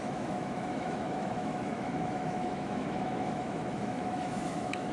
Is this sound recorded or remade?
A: remade